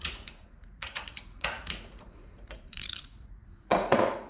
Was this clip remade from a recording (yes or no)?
yes